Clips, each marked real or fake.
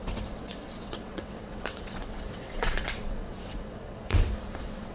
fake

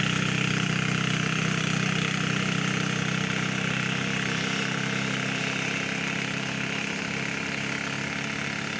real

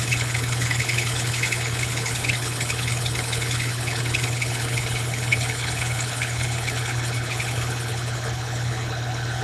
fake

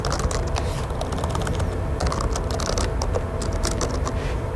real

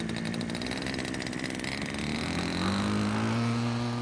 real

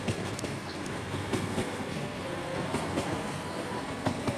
fake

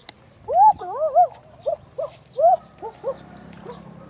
real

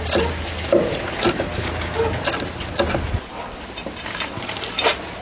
real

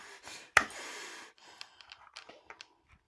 fake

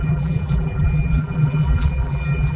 fake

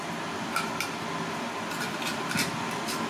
real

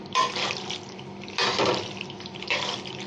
real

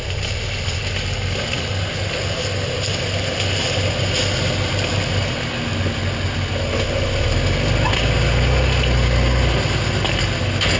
real